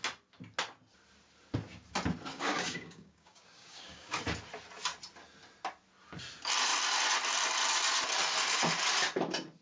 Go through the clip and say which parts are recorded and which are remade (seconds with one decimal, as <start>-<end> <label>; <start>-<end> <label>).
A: 0.0-2.3 recorded; 2.3-4.2 remade; 4.2-9.6 recorded